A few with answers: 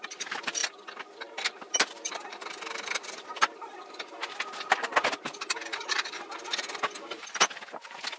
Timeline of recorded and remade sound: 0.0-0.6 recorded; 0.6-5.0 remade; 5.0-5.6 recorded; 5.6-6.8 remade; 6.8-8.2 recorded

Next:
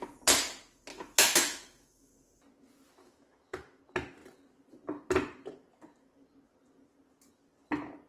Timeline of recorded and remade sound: 0.0-0.9 recorded; 0.9-2.1 remade; 2.1-3.0 recorded; 3.0-3.8 remade; 3.8-8.1 recorded

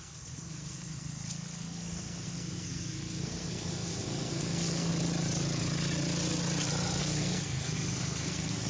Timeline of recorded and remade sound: 0.0-4.9 remade; 4.9-7.0 recorded; 7.0-8.7 remade

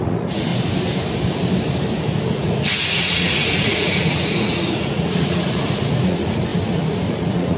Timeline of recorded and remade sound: 0.0-0.5 remade; 0.5-2.3 recorded; 2.3-7.6 remade